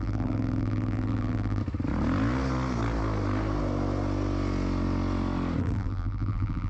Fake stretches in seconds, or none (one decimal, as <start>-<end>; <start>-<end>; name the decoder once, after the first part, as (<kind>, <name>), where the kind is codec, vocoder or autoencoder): 0.0-1.6 (vocoder, BigVGAN v2); 5.6-6.7